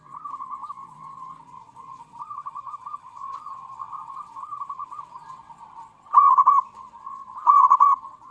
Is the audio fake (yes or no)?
yes